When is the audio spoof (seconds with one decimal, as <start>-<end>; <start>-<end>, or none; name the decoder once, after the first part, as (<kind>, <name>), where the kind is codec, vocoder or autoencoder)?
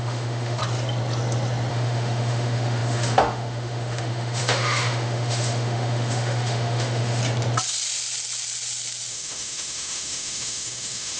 0.0-0.6 (autoencoder, DAC-VAE); 1.7-7.2; 9.1-11.2